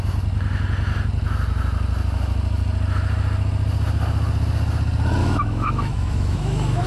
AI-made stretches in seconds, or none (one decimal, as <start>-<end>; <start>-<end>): 5.2-6.9